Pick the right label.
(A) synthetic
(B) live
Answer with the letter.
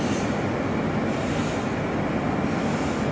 B